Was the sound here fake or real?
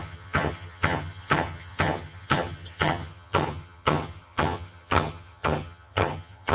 fake